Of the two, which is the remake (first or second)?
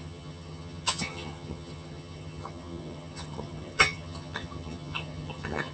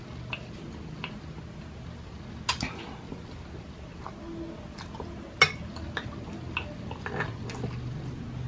first